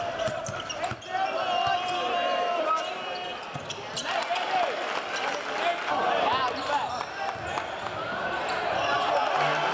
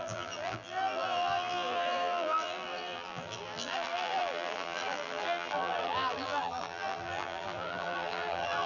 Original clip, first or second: first